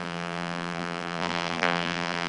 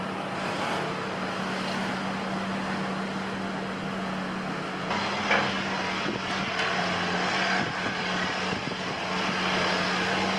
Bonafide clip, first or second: second